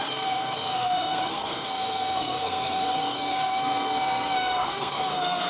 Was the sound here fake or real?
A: fake